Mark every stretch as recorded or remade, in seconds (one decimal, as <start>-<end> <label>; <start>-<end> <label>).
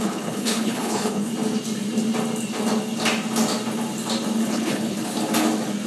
0.0-1.3 remade; 1.3-4.5 recorded; 4.5-5.1 remade; 5.1-5.9 recorded